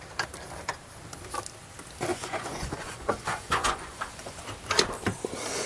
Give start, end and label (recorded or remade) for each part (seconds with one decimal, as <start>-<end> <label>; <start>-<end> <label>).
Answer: 0.0-2.1 recorded; 2.1-4.4 remade; 4.4-5.7 recorded